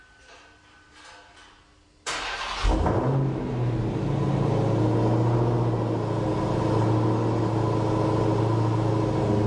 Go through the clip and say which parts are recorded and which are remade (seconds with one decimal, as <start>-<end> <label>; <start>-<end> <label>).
0.0-9.5 recorded